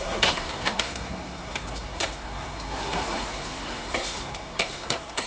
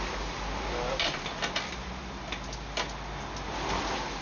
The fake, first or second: first